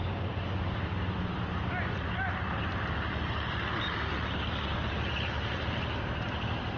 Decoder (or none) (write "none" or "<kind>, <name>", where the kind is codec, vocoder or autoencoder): none